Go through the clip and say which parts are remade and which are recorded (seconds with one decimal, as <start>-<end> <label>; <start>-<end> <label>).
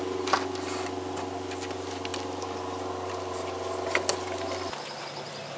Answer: 0.0-5.6 recorded